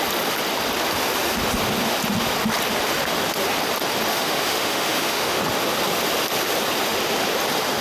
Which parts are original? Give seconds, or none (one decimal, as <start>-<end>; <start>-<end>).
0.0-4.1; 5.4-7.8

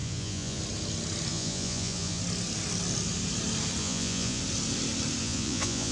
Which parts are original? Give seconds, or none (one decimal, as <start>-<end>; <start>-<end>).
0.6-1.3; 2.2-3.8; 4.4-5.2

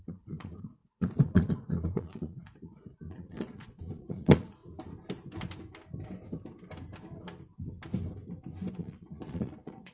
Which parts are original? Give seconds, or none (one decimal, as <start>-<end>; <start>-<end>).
4.6-8.7

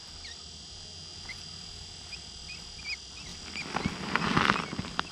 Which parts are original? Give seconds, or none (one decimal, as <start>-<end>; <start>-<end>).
0.0-5.1

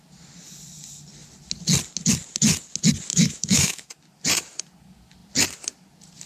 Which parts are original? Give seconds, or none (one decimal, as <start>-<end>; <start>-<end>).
0.0-3.1; 3.9-6.3